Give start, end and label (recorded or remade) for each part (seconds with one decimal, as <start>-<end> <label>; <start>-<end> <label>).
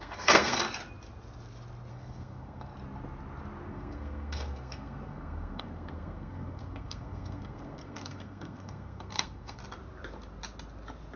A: 0.0-0.6 remade; 0.6-1.9 recorded; 1.9-2.7 remade; 2.7-3.7 recorded; 3.7-9.6 remade; 9.6-11.2 recorded